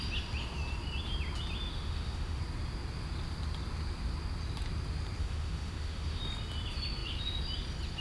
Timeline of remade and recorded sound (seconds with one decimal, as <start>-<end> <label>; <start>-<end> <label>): 0.0-1.7 recorded; 1.7-2.4 remade; 2.4-5.2 recorded; 5.2-6.2 remade; 6.2-8.0 recorded